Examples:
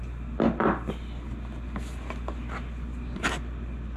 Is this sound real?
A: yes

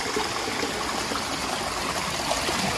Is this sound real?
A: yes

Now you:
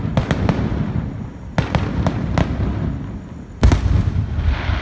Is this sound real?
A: yes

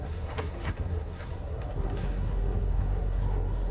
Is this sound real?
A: no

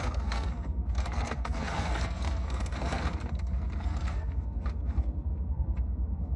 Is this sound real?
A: no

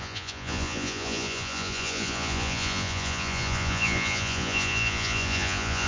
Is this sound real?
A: no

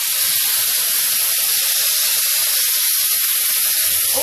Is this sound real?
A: yes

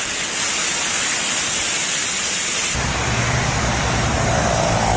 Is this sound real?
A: yes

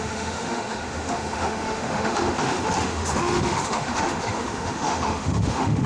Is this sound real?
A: no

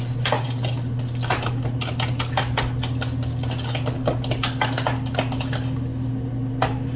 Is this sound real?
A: yes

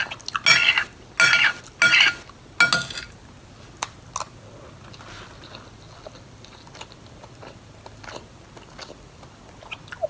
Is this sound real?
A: yes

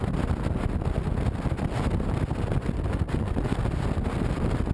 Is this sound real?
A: yes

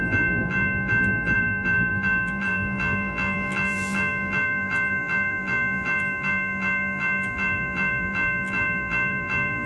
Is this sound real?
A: no